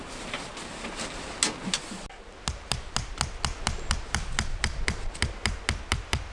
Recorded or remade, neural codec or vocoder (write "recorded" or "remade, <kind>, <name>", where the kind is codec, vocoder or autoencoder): recorded